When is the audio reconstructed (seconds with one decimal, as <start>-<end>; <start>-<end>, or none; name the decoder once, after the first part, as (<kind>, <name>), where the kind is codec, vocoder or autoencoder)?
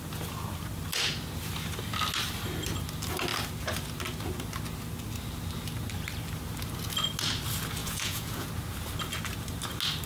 7.8-8.5 (vocoder, Vocos)